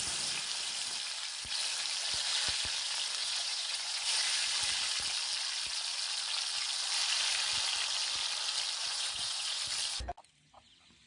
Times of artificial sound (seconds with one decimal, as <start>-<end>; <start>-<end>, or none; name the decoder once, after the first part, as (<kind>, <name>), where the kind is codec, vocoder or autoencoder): 3.2-4.1 (vocoder, Vocos); 8.8-9.6